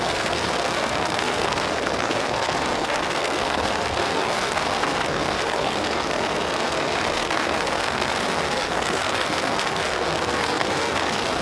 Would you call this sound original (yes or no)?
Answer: no